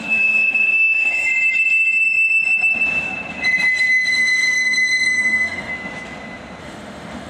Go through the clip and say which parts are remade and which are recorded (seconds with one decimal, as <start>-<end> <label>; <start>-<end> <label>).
0.0-1.3 remade; 1.3-4.1 recorded; 4.1-5.7 remade; 5.7-6.6 recorded; 6.6-7.3 remade